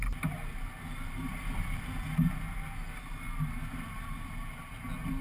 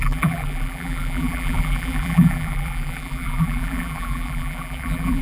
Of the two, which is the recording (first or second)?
first